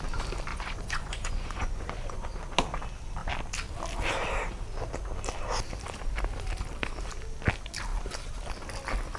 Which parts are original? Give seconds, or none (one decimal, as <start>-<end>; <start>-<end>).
0.0-0.5; 2.3-9.2